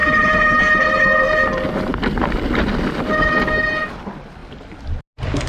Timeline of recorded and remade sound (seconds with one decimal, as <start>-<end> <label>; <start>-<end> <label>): 0.0-5.5 recorded